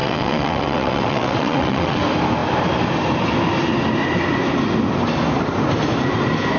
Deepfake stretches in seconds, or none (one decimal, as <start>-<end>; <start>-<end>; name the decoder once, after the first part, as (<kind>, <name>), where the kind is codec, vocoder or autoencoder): 0.0-2.0 (vocoder, WaveNeXt)